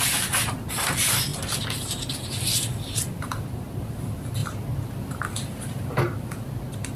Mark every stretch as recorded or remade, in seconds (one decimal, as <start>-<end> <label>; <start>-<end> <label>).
0.0-7.0 recorded